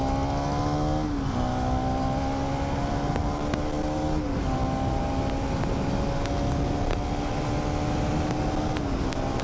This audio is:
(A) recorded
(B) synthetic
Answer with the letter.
A